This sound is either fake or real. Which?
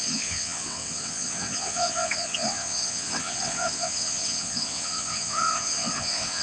fake